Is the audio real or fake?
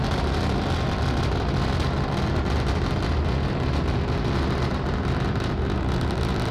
real